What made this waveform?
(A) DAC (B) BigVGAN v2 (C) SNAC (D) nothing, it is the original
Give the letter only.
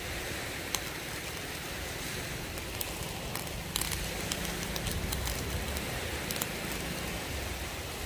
D